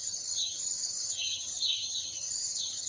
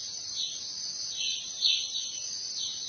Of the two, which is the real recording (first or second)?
second